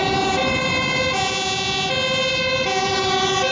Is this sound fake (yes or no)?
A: no